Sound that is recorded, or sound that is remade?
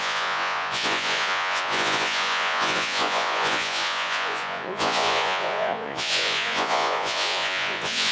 remade